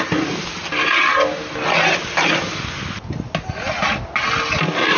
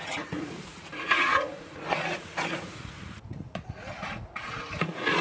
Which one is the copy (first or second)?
second